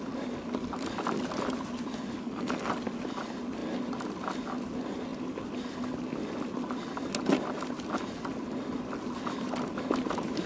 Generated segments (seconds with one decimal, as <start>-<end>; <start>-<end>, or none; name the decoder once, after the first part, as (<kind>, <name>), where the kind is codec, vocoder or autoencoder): 2.2-2.7 (codec, SNAC)